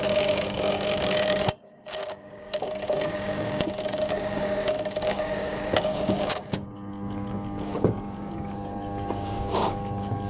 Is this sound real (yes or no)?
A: no